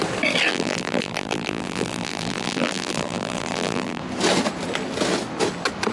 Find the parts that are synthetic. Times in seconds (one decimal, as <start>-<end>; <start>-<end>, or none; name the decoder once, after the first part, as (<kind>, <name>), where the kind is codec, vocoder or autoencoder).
0.5-4.0 (vocoder, BigVGAN v2)